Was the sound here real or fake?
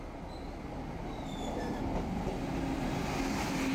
real